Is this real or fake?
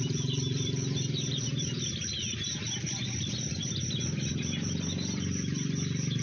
fake